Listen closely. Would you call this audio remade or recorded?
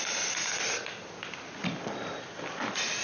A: recorded